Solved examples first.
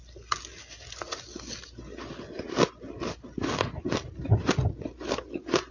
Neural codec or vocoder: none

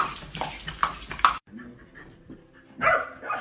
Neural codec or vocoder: none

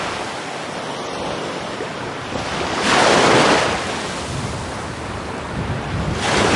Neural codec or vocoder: none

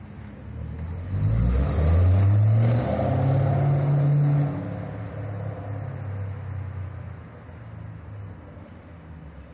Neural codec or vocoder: none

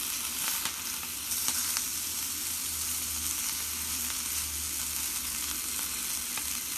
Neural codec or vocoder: none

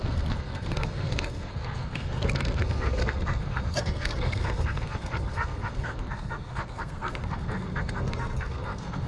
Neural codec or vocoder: codec, SNAC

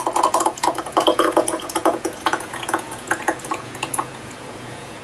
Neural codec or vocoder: vocoder, Vocos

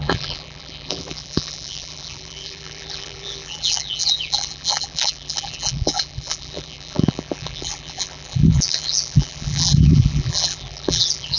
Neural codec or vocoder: vocoder, BigVGAN v2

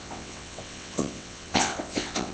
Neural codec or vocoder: vocoder, WaveNeXt